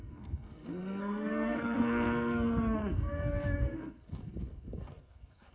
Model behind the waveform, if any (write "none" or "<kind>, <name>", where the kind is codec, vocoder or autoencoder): codec, SNAC